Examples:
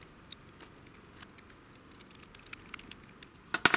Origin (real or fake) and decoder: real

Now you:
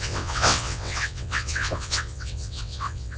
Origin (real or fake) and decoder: fake, vocoder, WaveNeXt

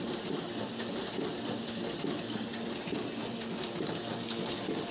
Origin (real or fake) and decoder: real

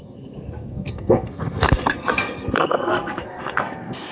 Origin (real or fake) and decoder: fake, codec, SNAC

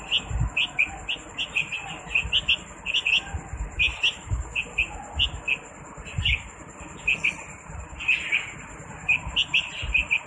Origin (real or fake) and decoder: real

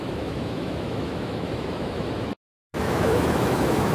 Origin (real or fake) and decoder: fake, autoencoder, DAC-VAE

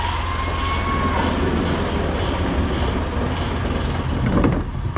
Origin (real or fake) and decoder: real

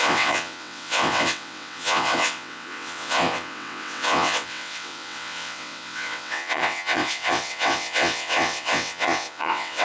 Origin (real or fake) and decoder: fake, vocoder, WaveNeXt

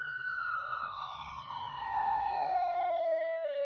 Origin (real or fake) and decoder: fake, codec, SNAC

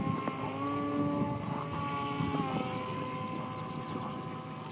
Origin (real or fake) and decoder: real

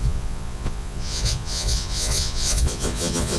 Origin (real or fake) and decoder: fake, vocoder, Vocos